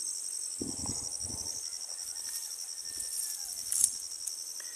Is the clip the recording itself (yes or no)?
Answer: yes